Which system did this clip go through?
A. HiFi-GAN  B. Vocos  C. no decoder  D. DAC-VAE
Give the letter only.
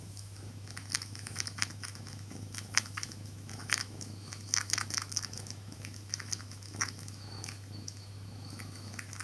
D